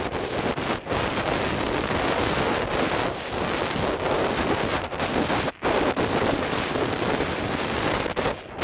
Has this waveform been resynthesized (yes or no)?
no